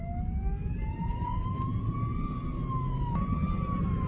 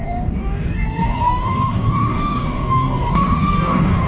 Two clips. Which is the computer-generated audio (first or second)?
second